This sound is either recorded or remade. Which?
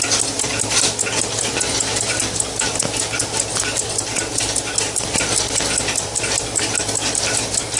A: recorded